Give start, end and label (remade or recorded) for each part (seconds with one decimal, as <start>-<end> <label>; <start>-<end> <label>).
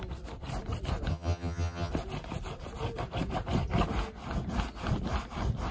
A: 0.0-1.1 recorded; 1.1-1.9 remade; 1.9-5.7 recorded